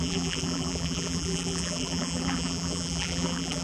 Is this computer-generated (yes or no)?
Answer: yes